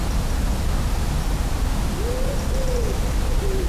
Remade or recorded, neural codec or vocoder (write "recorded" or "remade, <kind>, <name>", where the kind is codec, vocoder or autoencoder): recorded